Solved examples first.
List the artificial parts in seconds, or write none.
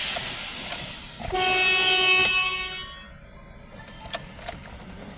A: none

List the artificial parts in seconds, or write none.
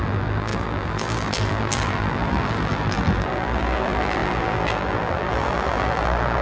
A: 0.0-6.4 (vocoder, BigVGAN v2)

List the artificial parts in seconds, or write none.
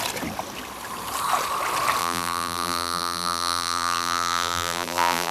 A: 2.0-5.3 (vocoder, BigVGAN v2)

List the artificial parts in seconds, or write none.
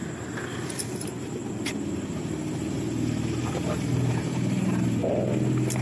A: 3.5-5.0 (vocoder, BigVGAN v2)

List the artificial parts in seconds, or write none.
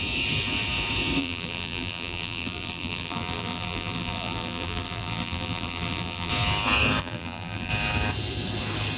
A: 1.2-6.3 (vocoder, BigVGAN v2); 7.0-7.7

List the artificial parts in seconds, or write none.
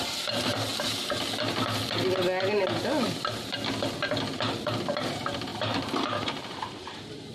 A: 0.0-0.7 (vocoder, BigVGAN v2); 4.6-7.3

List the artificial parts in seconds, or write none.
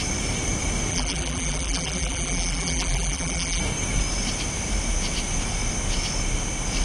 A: 0.9-3.6 (vocoder, BigVGAN v2)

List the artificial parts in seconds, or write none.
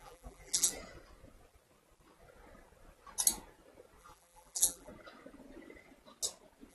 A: 0.0-0.7 (vocoder, BigVGAN v2); 4.0-4.9